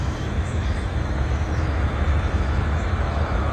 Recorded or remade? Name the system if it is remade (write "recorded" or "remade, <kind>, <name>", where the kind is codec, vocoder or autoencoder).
remade, autoencoder, DAC-VAE